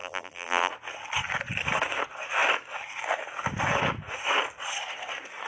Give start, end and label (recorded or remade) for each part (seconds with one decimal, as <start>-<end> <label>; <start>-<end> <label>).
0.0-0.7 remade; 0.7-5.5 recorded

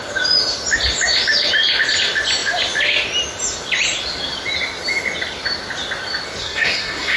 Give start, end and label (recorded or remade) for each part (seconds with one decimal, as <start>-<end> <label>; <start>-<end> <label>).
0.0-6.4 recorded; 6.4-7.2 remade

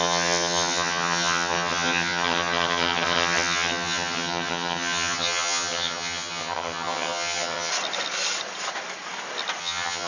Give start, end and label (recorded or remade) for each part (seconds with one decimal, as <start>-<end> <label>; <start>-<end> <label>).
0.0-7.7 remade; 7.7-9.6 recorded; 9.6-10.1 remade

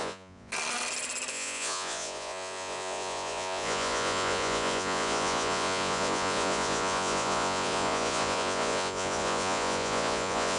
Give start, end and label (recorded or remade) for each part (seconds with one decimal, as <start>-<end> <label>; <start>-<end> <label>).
0.0-0.5 remade; 0.5-1.3 recorded; 1.3-10.6 remade

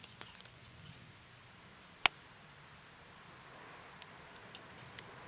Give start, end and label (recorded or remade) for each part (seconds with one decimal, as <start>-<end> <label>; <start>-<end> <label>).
0.0-1.2 remade; 1.2-5.3 recorded

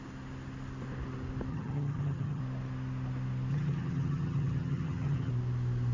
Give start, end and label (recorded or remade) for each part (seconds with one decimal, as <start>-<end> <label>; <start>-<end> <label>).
0.0-1.5 recorded; 1.5-2.4 remade; 2.4-3.5 recorded; 3.5-5.3 remade; 5.3-5.9 recorded